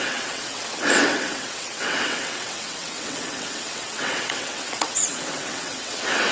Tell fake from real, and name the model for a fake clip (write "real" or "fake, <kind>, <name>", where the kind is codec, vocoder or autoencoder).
fake, vocoder, WaveNeXt